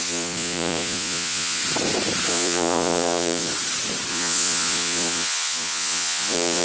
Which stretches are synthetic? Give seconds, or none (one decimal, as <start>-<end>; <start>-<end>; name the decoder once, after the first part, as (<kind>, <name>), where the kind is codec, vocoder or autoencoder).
0.0-1.6 (vocoder, Vocos); 2.3-3.5; 4.1-6.6